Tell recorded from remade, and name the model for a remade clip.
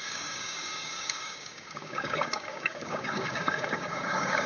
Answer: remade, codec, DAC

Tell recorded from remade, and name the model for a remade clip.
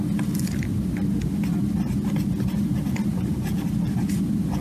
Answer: recorded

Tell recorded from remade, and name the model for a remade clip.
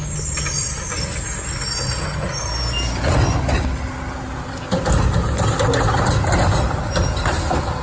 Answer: recorded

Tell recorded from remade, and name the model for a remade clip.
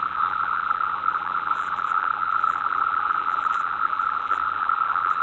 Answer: remade, vocoder, BigVGAN v2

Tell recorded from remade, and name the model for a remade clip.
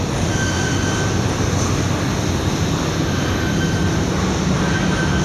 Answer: recorded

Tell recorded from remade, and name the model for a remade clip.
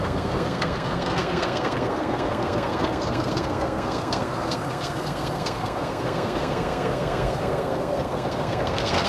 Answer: remade, codec, SNAC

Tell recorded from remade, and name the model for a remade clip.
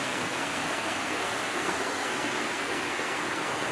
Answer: remade, codec, SNAC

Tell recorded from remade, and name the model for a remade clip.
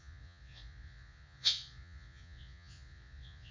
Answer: remade, vocoder, Vocos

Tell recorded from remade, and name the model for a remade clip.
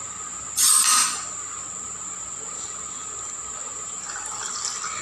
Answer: recorded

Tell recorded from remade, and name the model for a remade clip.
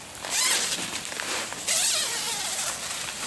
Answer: recorded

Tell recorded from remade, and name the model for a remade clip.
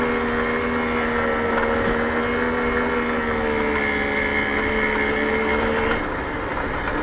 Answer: recorded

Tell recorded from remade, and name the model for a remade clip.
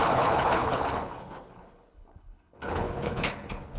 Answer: remade, codec, HILCodec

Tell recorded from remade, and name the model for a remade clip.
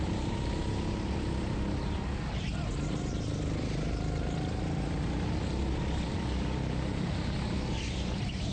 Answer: recorded